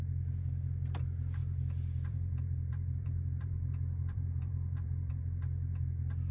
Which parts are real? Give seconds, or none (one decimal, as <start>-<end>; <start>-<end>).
0.0-1.4; 5.2-6.3